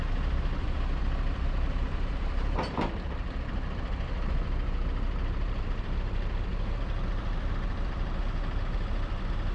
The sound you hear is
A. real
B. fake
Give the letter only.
B